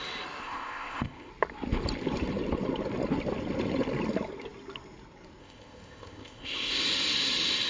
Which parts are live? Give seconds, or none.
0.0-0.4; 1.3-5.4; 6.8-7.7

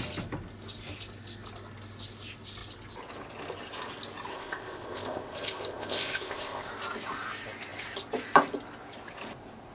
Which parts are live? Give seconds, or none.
0.0-4.3; 6.7-9.7

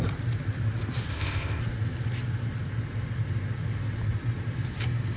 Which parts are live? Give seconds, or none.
0.0-1.1; 1.6-5.2